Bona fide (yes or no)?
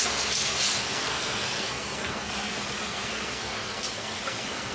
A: no